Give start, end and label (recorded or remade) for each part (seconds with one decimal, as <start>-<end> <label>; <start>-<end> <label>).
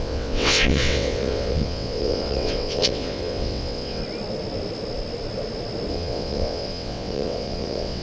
0.0-4.0 remade; 4.0-5.9 recorded; 5.9-8.0 remade